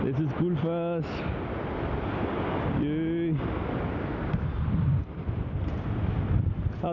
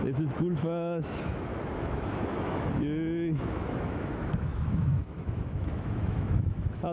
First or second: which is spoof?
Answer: second